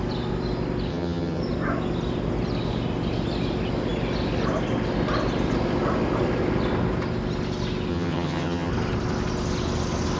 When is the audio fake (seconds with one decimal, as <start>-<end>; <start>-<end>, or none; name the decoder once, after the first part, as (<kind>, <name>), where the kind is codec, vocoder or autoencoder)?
0.9-1.4 (vocoder, HiFi-GAN); 7.9-8.7